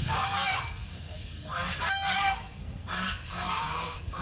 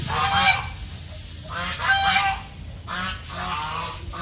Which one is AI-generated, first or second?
first